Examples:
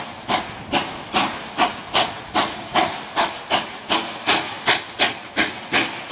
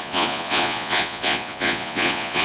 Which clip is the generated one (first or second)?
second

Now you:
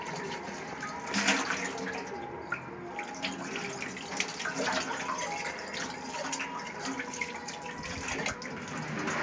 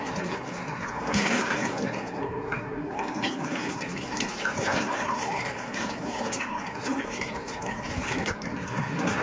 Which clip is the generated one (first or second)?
second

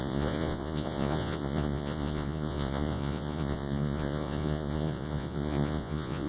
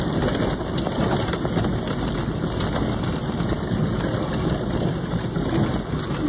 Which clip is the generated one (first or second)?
first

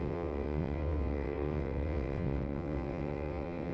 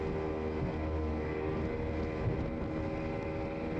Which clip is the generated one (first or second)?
first